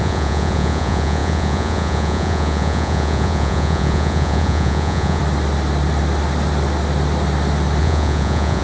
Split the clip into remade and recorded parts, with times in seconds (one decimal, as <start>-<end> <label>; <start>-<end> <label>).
0.0-5.2 remade; 5.2-7.8 recorded; 7.8-8.6 remade